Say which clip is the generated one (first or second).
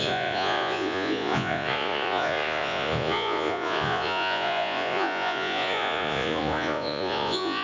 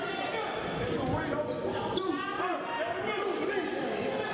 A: first